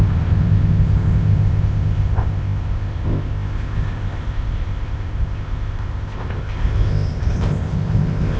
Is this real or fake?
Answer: fake